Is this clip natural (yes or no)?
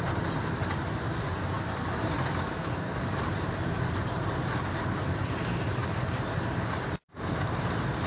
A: no